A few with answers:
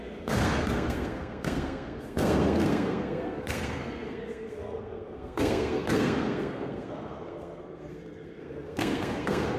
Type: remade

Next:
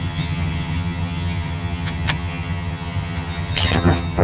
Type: remade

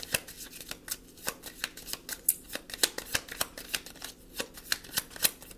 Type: recorded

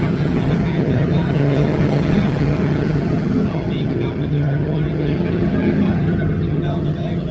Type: remade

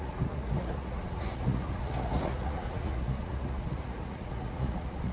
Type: remade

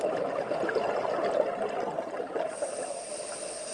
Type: recorded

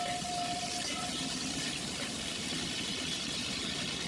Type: recorded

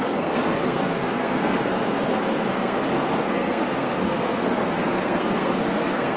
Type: remade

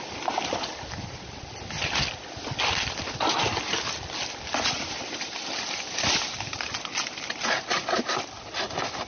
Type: recorded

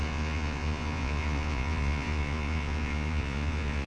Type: remade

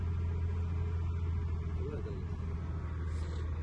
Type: recorded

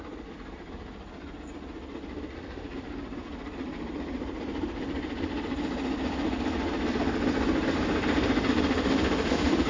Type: recorded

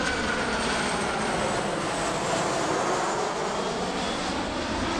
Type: recorded